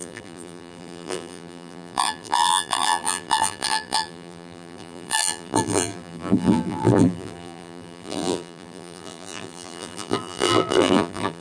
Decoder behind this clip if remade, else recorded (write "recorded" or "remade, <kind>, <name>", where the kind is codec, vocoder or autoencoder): remade, vocoder, BigVGAN v2